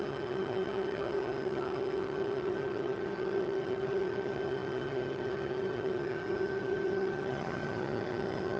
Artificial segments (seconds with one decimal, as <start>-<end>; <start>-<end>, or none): 0.0-8.6